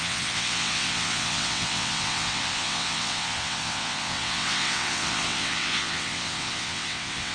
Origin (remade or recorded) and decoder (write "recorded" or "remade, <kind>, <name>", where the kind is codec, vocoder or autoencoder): remade, vocoder, WaveNeXt